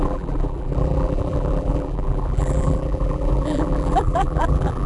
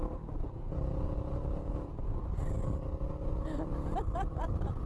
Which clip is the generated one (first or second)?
first